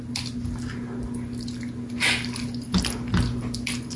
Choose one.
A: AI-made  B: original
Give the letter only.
B